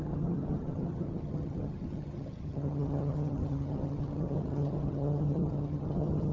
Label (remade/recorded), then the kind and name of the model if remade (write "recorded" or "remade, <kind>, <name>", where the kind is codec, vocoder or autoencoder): remade, vocoder, HiFi-GAN